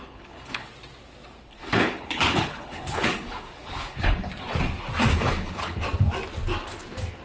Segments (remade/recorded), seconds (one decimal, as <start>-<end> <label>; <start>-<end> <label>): 0.0-0.7 remade; 0.7-1.5 recorded; 1.5-4.3 remade; 4.3-5.1 recorded; 5.1-5.8 remade; 5.8-7.2 recorded